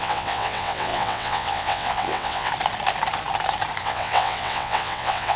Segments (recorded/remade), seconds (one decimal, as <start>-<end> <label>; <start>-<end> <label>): 0.0-2.5 remade; 2.5-3.8 recorded; 3.8-5.4 remade